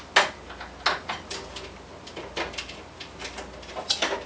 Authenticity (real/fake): real